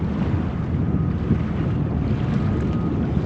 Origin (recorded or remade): recorded